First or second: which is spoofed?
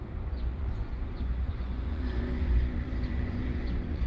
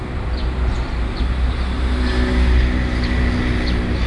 first